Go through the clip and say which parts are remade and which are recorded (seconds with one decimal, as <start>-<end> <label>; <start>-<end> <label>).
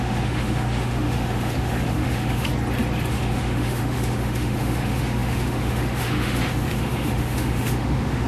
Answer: 0.0-2.5 remade; 2.5-3.1 recorded; 3.1-8.3 remade